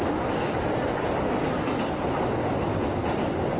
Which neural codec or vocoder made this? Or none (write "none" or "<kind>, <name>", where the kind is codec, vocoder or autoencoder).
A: none